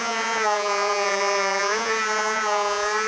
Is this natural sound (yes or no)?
no